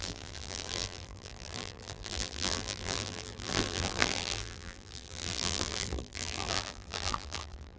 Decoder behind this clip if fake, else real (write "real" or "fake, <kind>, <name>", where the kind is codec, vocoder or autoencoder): fake, vocoder, BigVGAN v2